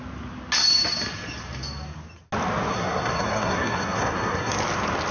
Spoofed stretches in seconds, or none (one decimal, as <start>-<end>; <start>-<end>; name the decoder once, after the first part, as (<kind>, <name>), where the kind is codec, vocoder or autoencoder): 2.7-4.5 (codec, SNAC)